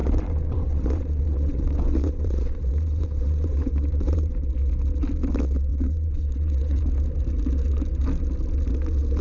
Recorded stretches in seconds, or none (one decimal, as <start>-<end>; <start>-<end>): 4.3-5.7; 6.8-9.2